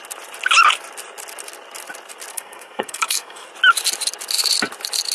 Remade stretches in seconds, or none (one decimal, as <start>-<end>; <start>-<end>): 2.3-3.5